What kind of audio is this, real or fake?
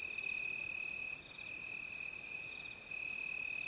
real